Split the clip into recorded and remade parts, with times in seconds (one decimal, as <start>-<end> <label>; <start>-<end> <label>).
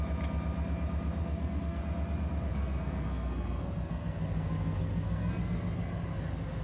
0.0-1.2 recorded; 1.2-1.8 remade; 1.8-2.5 recorded; 2.5-5.3 remade; 5.3-6.6 recorded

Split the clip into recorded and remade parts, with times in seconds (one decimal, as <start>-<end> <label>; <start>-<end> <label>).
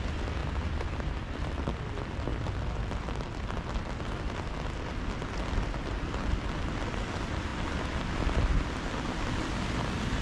0.0-0.4 recorded; 0.4-1.8 remade; 1.8-10.2 recorded